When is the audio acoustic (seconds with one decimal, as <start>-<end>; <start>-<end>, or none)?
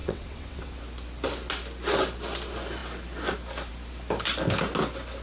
0.8-5.2